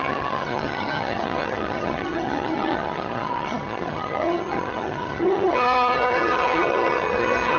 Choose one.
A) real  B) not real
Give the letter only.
B